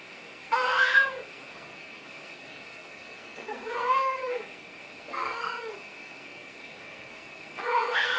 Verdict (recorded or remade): remade